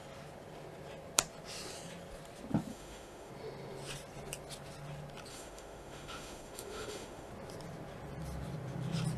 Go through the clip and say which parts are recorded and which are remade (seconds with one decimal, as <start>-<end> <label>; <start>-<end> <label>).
0.0-2.7 recorded; 2.7-3.3 remade; 3.3-5.3 recorded; 5.3-7.3 remade; 7.3-9.2 recorded